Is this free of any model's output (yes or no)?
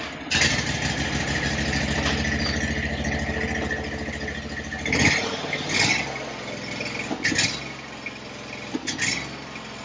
yes